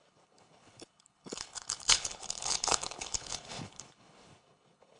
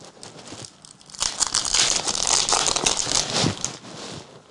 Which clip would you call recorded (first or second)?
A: second